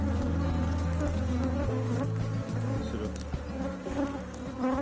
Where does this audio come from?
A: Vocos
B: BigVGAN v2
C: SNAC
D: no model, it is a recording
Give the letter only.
D